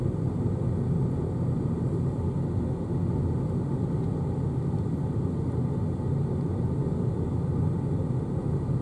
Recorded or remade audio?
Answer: recorded